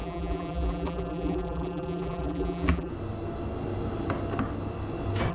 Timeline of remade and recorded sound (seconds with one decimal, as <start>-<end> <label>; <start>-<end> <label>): 0.0-2.9 remade; 2.9-5.3 recorded